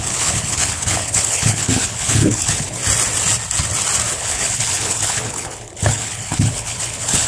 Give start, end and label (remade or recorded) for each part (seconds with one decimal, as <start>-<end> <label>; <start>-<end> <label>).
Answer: 0.0-2.8 remade; 2.8-4.1 recorded; 4.1-7.3 remade